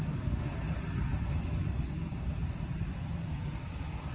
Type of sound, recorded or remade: recorded